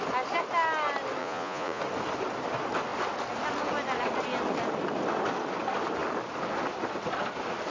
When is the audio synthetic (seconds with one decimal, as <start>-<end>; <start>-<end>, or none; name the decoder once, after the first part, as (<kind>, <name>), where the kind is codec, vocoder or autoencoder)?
1.2-1.8 (vocoder, Vocos)